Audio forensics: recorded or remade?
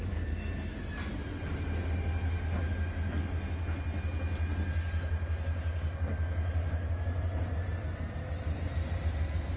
recorded